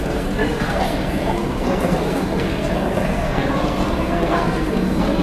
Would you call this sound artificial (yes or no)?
yes